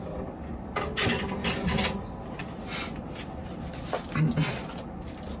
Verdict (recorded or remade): recorded